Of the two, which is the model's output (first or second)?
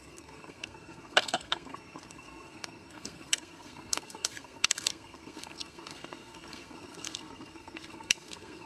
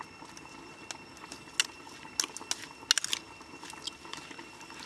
first